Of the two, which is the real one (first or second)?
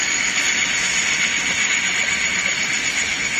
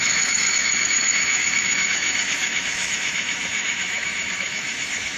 first